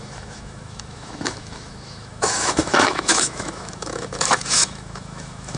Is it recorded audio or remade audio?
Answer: remade